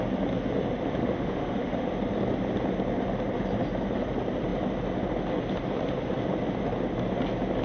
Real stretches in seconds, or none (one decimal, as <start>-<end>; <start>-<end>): 0.0-1.0; 1.8-7.6

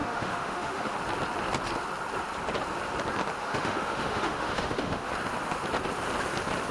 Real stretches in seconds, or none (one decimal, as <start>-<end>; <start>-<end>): 0.9-3.4; 5.1-6.7

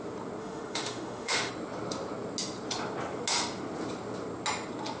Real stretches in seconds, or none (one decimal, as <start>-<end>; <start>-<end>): 0.0-0.4; 1.5-5.0

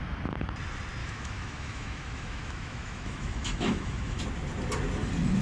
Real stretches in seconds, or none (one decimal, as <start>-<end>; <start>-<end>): 0.0-1.0; 4.2-5.4

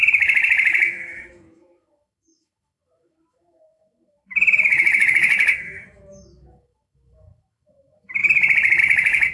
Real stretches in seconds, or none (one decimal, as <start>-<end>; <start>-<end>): 8.2-8.8

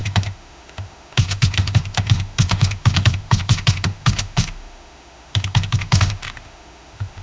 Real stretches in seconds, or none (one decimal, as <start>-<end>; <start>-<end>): none